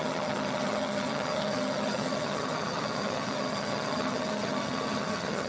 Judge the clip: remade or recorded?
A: remade